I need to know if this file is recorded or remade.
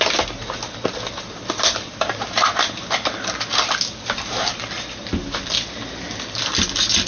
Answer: recorded